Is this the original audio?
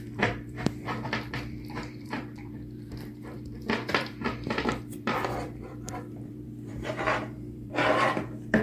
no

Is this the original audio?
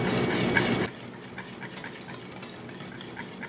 yes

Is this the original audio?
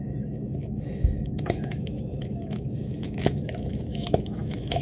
no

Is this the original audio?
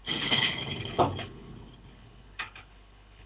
no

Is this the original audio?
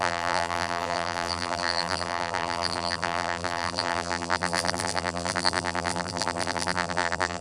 no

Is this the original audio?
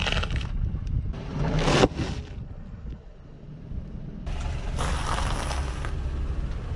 no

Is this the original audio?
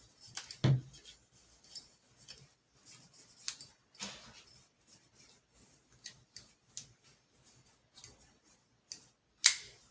yes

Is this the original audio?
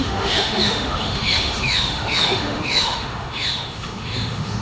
no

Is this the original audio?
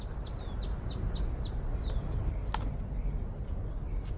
yes